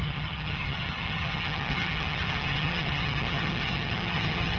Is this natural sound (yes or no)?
no